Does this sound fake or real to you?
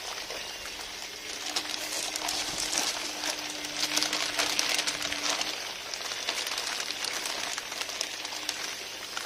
real